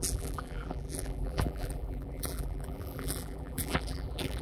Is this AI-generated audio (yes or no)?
yes